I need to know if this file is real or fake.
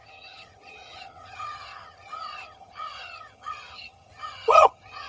fake